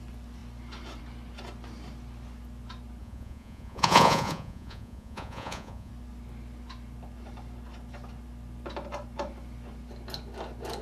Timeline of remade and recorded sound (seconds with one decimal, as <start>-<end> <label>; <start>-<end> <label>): 0.0-3.0 recorded; 3.0-5.9 remade; 5.9-10.8 recorded